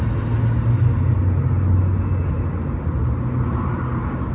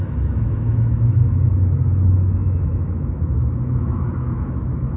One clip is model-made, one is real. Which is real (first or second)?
first